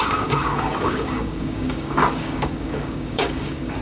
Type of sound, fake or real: fake